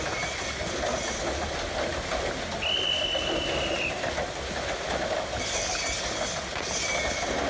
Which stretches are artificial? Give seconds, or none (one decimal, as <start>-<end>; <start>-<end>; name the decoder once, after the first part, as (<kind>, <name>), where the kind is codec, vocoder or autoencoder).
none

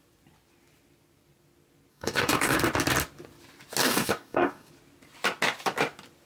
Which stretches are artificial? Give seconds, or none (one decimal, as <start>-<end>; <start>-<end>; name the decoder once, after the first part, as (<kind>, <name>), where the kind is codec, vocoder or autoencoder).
1.9-2.6 (codec, DAC); 3.8-4.7

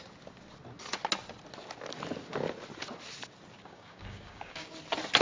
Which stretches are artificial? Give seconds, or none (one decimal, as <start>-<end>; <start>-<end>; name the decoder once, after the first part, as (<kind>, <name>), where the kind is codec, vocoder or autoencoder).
3.6-4.7 (codec, DAC)

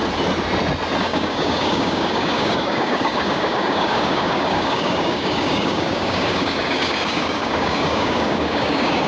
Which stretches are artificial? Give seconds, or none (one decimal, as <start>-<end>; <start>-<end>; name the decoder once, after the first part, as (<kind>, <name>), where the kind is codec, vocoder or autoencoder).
1.0-9.1 (codec, DAC)